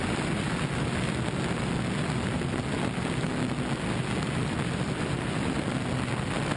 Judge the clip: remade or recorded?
recorded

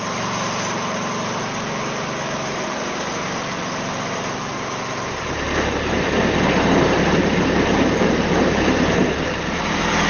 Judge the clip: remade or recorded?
remade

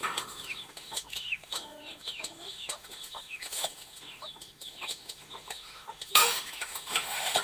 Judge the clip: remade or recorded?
remade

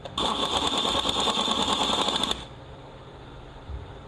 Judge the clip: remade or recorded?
recorded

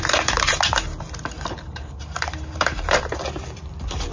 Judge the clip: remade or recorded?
remade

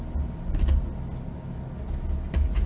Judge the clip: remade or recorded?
recorded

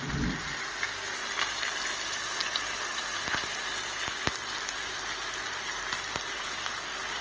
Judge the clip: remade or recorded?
recorded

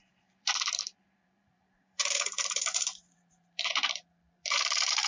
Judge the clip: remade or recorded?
remade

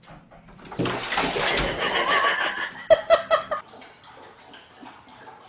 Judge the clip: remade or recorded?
recorded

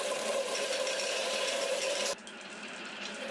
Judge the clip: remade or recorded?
remade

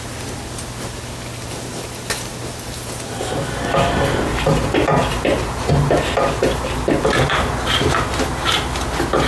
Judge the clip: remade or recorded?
recorded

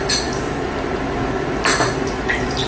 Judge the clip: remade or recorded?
remade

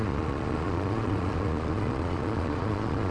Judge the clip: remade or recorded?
remade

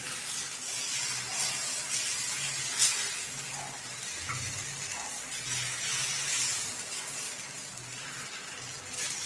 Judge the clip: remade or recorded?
recorded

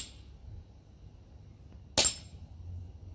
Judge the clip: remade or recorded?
recorded